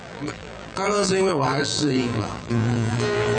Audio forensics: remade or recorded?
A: remade